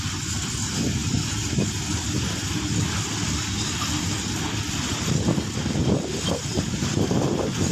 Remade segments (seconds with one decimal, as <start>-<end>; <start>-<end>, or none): none